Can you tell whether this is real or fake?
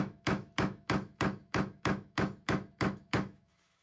fake